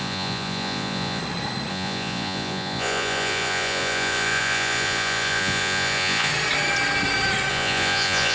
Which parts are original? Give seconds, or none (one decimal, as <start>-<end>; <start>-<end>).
1.2-1.7; 6.3-7.5